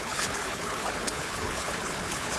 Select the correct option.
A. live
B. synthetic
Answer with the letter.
B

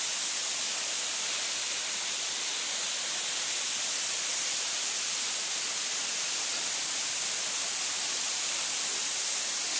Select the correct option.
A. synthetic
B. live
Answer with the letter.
B